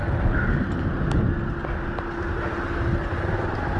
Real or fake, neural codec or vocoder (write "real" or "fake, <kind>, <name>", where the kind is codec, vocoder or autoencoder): real